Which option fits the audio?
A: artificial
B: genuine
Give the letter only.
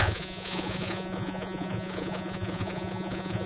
A